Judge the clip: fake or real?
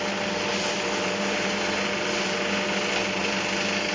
real